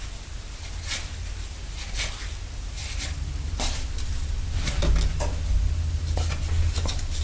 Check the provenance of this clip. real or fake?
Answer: real